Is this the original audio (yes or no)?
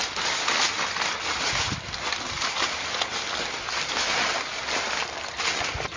yes